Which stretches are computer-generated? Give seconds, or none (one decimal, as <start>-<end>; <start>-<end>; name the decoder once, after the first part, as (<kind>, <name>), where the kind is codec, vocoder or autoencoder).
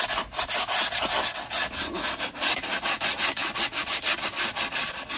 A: none